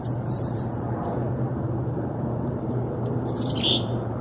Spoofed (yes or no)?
yes